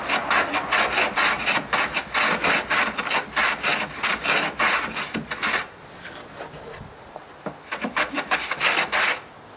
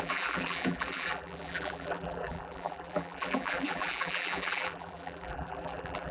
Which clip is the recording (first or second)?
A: first